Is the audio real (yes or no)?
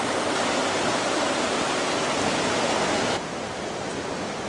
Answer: yes